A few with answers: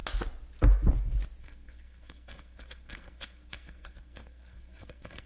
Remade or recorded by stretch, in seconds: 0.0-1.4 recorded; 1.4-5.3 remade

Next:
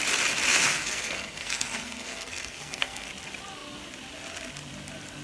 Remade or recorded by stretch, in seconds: 0.0-0.5 recorded; 0.5-3.1 remade; 3.1-5.2 recorded

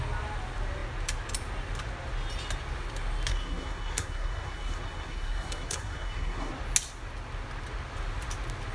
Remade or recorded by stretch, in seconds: 0.0-3.3 recorded; 3.3-6.5 remade; 6.5-8.7 recorded

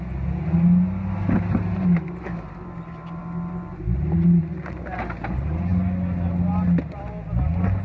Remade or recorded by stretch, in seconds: 0.0-7.8 recorded